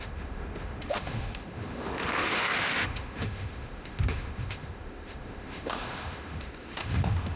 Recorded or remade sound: remade